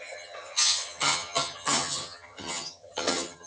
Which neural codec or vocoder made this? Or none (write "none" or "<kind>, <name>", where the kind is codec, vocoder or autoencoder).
vocoder, HiFi-GAN